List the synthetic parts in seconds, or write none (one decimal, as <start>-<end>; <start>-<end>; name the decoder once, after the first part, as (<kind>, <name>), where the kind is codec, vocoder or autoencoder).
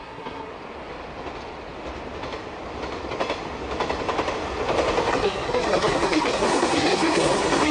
0.0-0.5 (codec, SNAC); 5.1-7.7